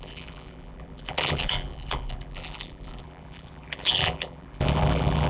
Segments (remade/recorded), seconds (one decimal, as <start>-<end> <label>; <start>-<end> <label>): 0.0-5.3 remade